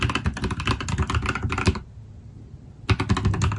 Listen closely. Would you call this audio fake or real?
real